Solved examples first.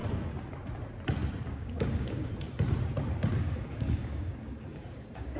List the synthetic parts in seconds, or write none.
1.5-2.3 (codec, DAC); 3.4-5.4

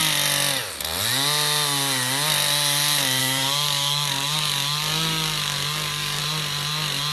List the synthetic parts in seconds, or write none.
3.2-6.2 (codec, DAC)

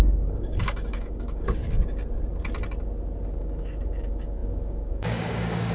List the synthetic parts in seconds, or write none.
0.0-1.6 (codec, DAC); 3.4-5.7

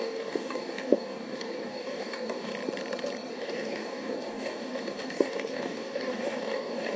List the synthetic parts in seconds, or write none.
0.0-2.5 (codec, DAC); 3.3-7.0

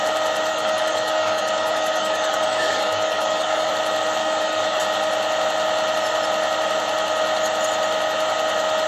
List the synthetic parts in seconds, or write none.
0.5-3.7 (codec, DAC); 4.2-4.8